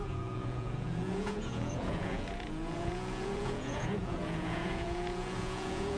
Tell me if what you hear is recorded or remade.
remade